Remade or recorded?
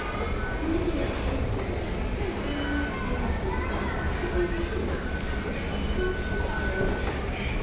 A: recorded